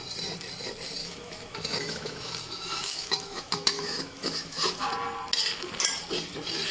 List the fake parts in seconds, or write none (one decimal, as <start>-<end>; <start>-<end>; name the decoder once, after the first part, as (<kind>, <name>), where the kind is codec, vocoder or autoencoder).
1.0-4.9 (autoencoder, DAC-VAE)